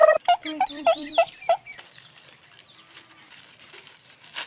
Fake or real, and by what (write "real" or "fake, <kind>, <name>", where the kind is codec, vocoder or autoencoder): fake, vocoder, BigVGAN v2